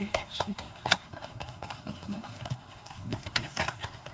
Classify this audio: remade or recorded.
remade